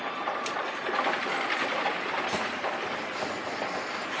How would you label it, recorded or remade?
recorded